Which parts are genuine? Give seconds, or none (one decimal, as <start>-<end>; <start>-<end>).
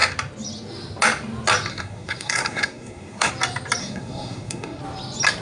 0.0-1.7; 3.3-3.8; 4.8-5.4